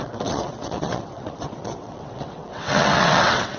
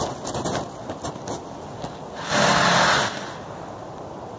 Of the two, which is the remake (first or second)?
first